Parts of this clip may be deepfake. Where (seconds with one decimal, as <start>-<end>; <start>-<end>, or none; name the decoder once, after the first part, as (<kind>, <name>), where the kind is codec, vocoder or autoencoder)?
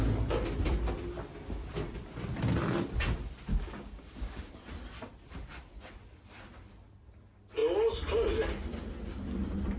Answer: 3.5-4.5 (codec, DAC)